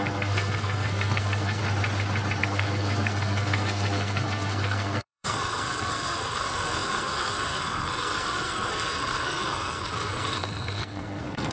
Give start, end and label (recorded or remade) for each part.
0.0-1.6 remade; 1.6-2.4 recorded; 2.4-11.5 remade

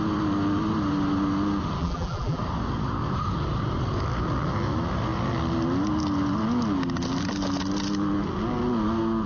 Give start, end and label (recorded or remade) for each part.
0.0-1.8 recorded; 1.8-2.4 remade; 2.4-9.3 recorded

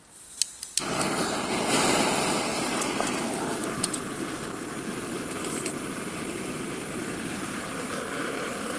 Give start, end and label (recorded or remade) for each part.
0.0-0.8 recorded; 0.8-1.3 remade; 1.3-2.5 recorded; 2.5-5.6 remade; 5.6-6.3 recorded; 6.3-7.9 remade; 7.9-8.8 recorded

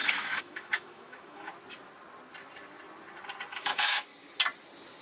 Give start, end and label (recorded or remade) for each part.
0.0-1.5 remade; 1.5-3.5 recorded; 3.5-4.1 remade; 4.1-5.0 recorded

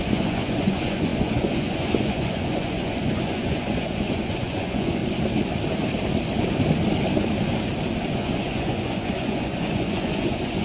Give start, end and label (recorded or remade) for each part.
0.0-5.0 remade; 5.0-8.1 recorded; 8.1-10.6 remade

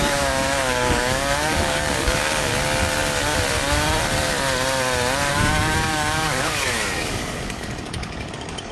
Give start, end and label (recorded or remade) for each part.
0.0-2.5 remade; 2.5-5.3 recorded; 5.3-8.7 remade

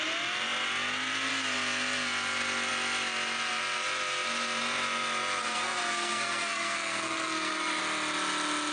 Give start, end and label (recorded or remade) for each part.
0.0-5.4 recorded; 5.4-7.8 remade; 7.8-8.7 recorded

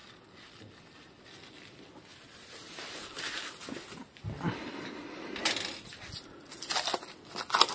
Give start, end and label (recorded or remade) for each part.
0.0-7.7 recorded